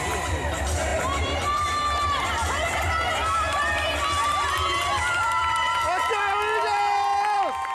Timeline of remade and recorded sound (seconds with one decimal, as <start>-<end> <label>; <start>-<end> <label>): 0.0-0.9 recorded; 0.9-2.2 remade; 2.2-4.2 recorded; 4.2-4.8 remade; 4.8-7.7 recorded